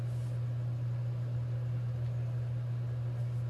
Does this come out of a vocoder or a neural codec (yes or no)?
no